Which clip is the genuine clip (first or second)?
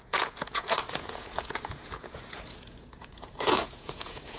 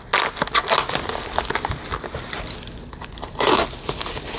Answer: second